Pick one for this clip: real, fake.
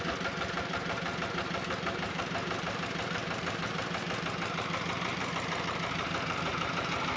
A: fake